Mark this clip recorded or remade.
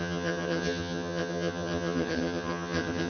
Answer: remade